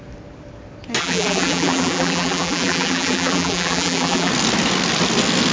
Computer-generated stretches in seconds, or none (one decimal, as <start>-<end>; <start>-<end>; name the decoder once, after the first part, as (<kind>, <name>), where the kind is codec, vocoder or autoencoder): 1.0-4.3 (vocoder, BigVGAN v2)